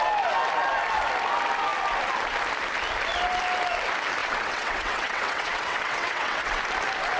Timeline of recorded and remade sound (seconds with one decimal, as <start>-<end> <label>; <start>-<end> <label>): 0.0-4.2 recorded; 4.2-6.6 remade; 6.6-7.2 recorded